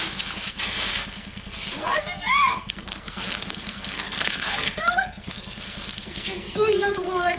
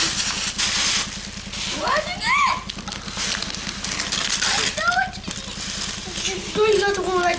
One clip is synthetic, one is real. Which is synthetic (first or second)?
first